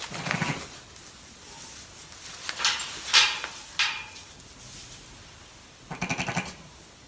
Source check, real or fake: real